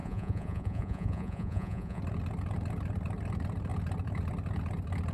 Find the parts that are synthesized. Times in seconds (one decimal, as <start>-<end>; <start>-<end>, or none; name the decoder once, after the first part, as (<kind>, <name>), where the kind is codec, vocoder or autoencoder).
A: 0.0-2.0 (vocoder, Vocos)